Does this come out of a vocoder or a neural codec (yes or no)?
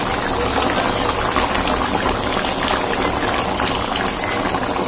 no